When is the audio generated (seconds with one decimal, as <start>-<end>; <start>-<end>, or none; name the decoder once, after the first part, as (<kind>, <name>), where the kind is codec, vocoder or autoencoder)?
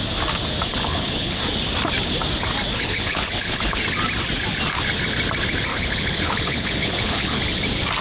0.7-1.4 (codec, HILCodec); 2.7-3.8; 5.7-7.4